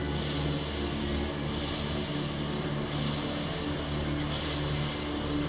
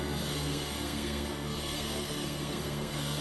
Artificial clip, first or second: second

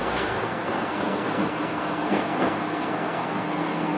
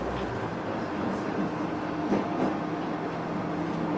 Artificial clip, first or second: first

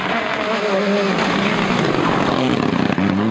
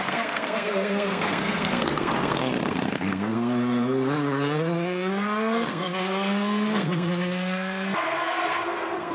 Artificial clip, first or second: second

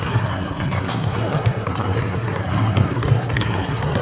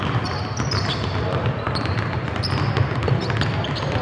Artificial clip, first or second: first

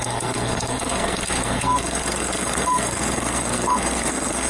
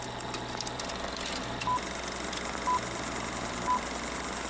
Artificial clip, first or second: first